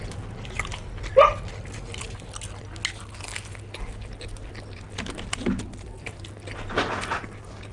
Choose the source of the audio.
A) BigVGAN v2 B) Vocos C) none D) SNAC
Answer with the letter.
C